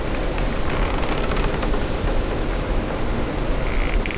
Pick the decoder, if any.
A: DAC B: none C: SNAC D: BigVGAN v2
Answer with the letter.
B